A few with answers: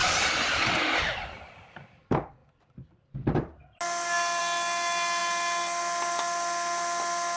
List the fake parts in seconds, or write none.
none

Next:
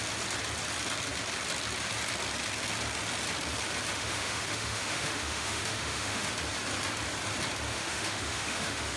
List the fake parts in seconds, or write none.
3.9-6.3 (autoencoder, DAC-VAE); 7.7-9.0

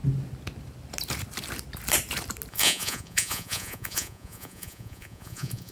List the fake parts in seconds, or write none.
2.5-5.7 (vocoder, Vocos)

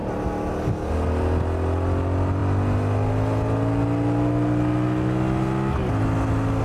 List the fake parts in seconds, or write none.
none

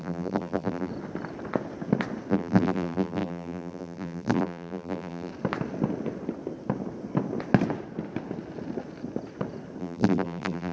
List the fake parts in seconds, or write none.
0.0-0.9 (vocoder, BigVGAN v2); 2.3-5.3; 9.8-10.7

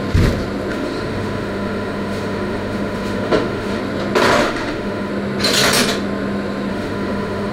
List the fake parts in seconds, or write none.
0.7-3.8 (autoencoder, DAC-VAE); 4.4-5.1; 6.7-7.5